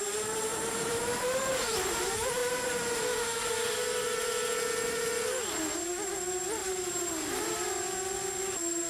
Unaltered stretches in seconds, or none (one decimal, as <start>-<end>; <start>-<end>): 0.0-0.5; 1.6-6.6; 7.5-8.9